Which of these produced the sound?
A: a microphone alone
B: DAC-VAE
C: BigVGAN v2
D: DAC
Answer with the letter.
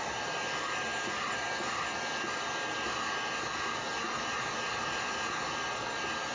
A